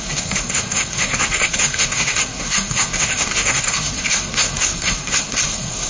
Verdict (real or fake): fake